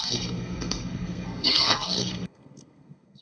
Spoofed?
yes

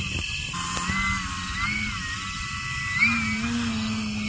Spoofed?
no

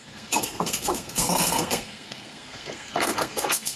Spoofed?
yes